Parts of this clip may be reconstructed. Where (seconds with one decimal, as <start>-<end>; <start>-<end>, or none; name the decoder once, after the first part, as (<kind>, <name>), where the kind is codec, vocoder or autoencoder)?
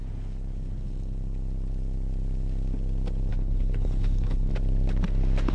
3.3-4.5 (codec, HILCodec)